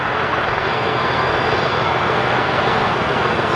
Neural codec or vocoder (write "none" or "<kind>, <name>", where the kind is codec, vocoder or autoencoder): codec, SNAC